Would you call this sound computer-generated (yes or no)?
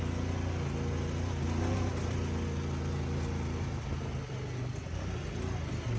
no